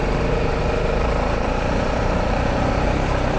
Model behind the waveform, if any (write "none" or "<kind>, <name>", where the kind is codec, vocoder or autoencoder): vocoder, BigVGAN v2